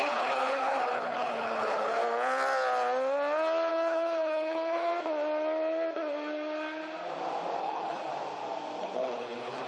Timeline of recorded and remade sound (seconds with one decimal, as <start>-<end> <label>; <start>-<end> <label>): 0.0-2.0 remade; 2.0-3.7 recorded; 3.7-4.9 remade; 4.9-7.6 recorded; 7.6-8.1 remade; 8.1-8.8 recorded; 8.8-9.7 remade